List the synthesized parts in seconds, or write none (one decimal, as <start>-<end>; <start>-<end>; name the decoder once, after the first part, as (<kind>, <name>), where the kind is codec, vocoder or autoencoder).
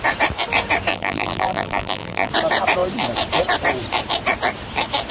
0.9-2.3 (vocoder, BigVGAN v2)